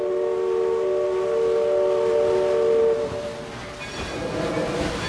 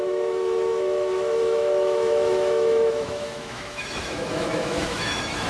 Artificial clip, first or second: second